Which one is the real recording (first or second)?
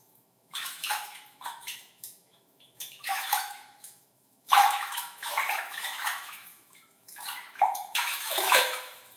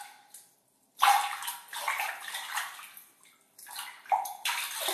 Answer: second